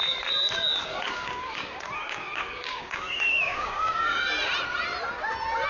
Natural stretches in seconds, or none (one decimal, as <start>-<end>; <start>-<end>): 0.0-0.8; 4.2-5.7